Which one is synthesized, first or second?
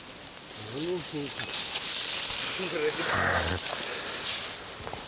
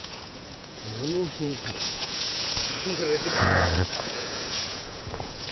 second